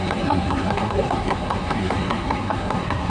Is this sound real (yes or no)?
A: no